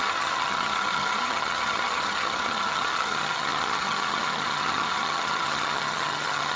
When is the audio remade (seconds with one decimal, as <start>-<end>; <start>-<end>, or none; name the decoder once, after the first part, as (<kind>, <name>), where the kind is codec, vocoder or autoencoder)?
0.0-6.6 (vocoder, HiFi-GAN)